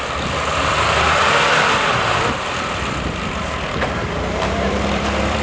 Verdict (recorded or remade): remade